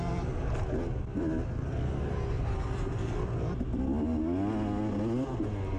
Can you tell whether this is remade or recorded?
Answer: recorded